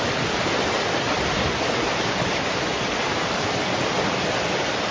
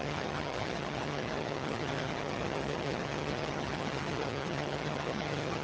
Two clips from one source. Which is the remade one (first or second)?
second